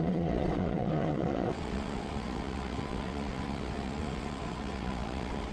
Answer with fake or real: fake